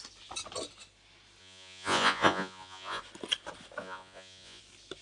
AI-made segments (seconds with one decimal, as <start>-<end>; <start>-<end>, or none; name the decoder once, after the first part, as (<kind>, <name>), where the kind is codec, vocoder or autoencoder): 1.4-3.0 (vocoder, Vocos); 3.8-4.6